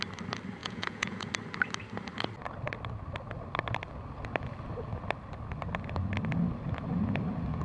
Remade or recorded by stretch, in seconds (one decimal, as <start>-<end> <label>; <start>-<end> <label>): 0.0-0.6 recorded; 0.6-1.3 remade; 1.3-7.6 recorded